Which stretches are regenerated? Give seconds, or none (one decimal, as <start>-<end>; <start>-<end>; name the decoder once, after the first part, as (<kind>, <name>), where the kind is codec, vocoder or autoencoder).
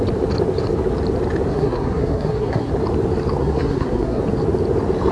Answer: 1.5-2.7 (codec, SNAC); 3.4-4.2